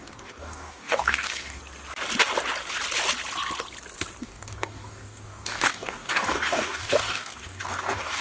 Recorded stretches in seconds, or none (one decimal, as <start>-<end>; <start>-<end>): 1.6-4.2